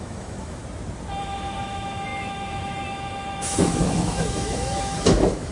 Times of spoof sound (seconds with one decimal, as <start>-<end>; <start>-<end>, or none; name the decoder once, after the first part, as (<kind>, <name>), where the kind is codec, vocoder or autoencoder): 0.0-0.6 (autoencoder, DAC-VAE); 1.2-5.5